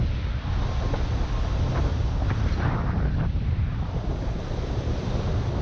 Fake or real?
real